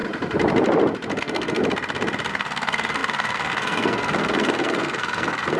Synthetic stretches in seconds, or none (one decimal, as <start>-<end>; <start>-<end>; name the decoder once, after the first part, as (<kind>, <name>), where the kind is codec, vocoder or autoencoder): 1.2-1.6 (codec, SNAC); 2.3-5.6